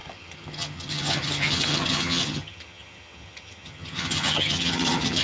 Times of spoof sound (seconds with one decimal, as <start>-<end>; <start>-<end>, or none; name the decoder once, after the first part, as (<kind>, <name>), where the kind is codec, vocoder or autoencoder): 0.0-5.2 (vocoder, HiFi-GAN)